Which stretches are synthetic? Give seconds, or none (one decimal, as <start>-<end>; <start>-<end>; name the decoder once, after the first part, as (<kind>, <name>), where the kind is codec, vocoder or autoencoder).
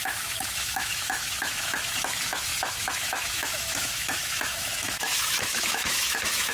0.0-6.5 (autoencoder, DAC-VAE)